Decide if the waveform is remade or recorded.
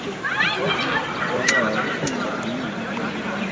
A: recorded